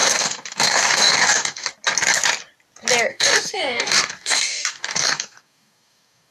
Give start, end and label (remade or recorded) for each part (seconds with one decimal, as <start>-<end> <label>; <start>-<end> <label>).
0.0-1.7 remade; 1.7-3.1 recorded; 3.1-6.3 remade